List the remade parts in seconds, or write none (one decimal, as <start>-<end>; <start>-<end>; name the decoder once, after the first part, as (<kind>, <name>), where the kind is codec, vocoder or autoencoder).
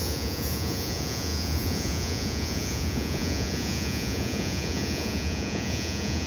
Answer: 0.0-6.3 (vocoder, Vocos)